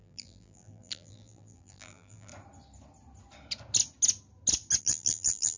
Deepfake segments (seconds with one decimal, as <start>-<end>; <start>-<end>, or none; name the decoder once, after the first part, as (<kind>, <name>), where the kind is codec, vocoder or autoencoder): 0.0-2.3 (vocoder, BigVGAN v2); 4.8-5.6